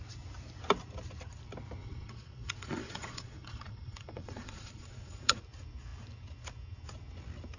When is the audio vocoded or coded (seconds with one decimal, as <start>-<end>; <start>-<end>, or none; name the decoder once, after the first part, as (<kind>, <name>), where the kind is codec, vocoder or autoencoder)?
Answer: 1.8-5.4 (vocoder, Vocos)